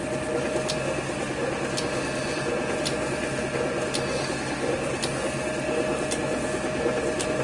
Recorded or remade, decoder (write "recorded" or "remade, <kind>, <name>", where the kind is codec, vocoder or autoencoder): recorded